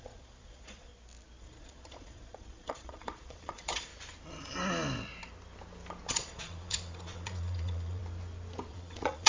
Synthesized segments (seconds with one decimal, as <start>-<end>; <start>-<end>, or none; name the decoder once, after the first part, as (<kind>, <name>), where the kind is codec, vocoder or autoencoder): 0.0-0.9 (vocoder, Vocos); 1.4-3.9; 6.1-8.0; 8.7-9.3